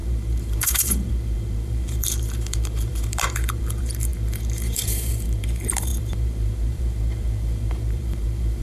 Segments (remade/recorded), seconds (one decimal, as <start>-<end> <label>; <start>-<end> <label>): 0.0-8.6 remade